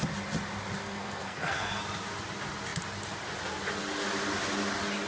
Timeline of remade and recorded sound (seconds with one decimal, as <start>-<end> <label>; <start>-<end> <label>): 0.0-0.8 recorded; 0.8-1.8 remade; 1.8-5.1 recorded